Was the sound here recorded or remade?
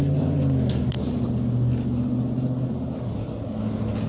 recorded